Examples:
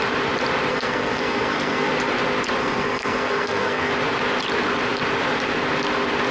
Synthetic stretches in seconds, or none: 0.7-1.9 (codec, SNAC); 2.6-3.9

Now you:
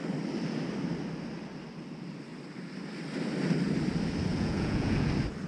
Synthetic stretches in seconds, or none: 4.3-5.1 (vocoder, Vocos)

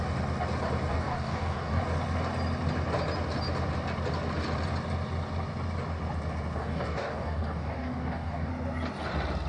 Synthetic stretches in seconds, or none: 0.9-1.8 (codec, DAC); 6.6-8.5

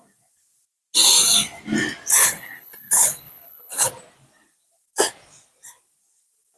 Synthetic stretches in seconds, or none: 2.2-3.9 (codec, HILCodec)